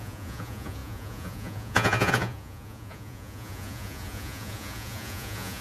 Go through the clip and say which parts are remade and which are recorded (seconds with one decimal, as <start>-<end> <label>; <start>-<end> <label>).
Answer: 0.0-5.6 remade